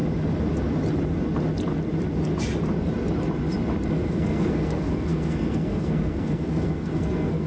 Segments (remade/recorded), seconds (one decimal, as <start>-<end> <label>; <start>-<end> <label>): 0.0-3.9 recorded; 3.9-7.5 remade